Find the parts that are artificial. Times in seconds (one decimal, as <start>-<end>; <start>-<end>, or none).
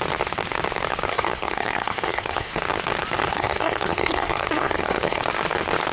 1.1-2.5; 3.3-5.2